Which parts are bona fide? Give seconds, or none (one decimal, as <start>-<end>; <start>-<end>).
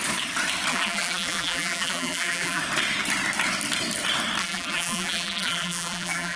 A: 0.0-0.7; 2.6-4.4